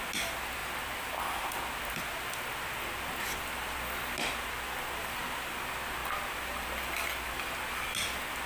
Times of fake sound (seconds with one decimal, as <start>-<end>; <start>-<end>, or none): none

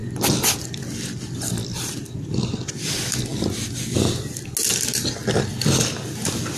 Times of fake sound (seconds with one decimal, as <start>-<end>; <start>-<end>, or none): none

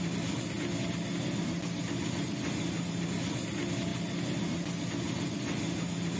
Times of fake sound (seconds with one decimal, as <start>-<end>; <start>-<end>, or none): none

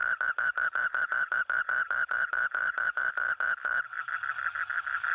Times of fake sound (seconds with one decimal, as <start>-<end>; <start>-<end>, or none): 0.0-3.1

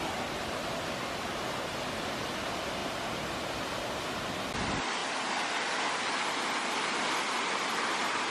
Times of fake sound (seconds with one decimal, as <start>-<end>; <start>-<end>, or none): 2.8-4.1; 5.0-5.5